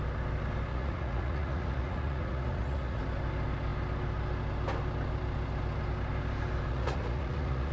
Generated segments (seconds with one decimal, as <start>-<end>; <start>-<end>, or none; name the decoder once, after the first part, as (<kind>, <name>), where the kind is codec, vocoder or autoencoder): 0.7-3.0 (vocoder, Vocos); 6.7-7.7